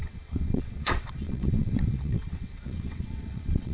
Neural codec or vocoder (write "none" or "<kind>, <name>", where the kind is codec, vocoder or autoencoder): vocoder, WaveNeXt